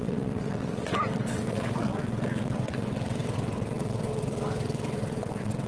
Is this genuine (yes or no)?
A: no